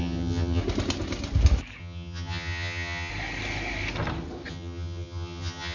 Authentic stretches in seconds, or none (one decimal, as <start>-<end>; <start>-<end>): 0.6-1.8; 3.1-4.5